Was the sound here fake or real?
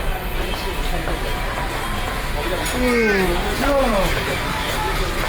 real